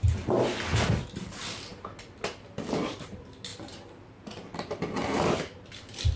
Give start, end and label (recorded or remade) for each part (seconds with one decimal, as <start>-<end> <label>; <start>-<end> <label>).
0.0-3.5 recorded; 3.5-5.3 remade; 5.3-6.2 recorded